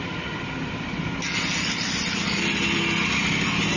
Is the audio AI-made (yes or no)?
no